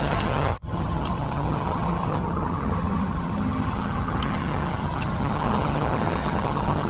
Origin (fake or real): fake